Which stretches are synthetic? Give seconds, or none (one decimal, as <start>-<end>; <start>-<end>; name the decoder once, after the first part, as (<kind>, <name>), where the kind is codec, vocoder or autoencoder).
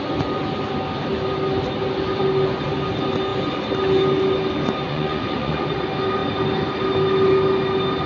4.9-5.8 (vocoder, Vocos)